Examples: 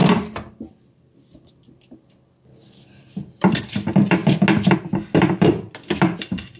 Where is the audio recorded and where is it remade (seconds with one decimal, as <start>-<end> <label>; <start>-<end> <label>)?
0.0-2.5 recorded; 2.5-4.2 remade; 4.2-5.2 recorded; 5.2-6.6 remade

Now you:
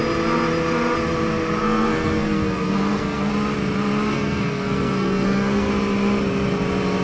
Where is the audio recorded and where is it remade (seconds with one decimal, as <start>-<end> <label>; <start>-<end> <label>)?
0.0-1.6 recorded; 1.6-3.3 remade; 3.3-4.1 recorded; 4.1-5.7 remade; 5.7-7.0 recorded

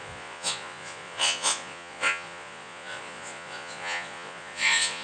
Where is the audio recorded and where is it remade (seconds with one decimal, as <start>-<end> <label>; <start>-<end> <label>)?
0.0-5.0 remade

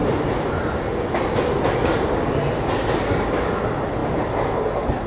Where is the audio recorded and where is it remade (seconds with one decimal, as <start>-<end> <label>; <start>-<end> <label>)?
0.0-5.1 recorded

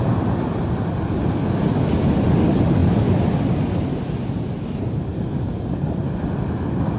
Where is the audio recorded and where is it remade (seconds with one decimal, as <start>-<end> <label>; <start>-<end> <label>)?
0.0-7.0 recorded

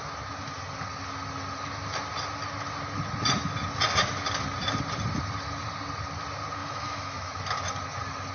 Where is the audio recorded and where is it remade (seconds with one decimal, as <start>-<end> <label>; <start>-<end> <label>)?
0.0-6.6 recorded; 6.6-7.4 remade; 7.4-8.3 recorded